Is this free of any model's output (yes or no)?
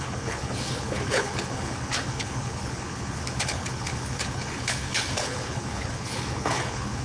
no